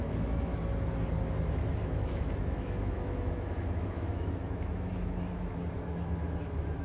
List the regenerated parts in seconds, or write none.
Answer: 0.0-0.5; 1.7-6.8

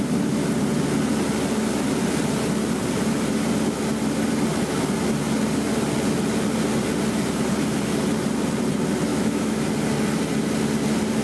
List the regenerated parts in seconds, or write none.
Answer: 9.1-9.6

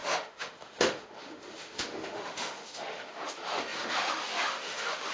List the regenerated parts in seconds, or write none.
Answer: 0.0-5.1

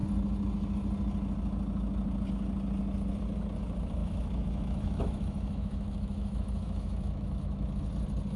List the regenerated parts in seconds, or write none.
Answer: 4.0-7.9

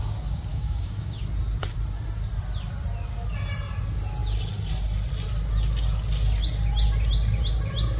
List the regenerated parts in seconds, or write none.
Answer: 0.5-1.2

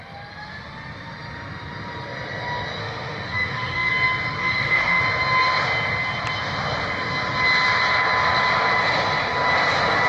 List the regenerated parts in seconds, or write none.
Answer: 2.8-3.9; 4.4-5.0

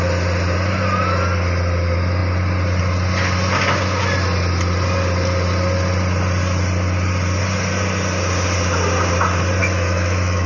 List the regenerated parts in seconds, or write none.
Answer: 9.6-10.5

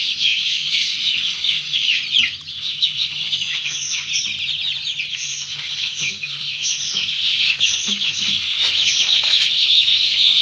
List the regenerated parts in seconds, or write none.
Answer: 0.0-2.0; 2.5-4.1; 5.1-10.4